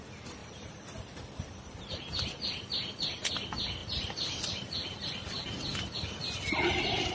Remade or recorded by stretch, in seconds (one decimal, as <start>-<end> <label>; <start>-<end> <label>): 0.0-0.4 recorded; 0.4-2.1 remade; 2.1-3.8 recorded; 3.8-4.5 remade; 4.5-7.1 recorded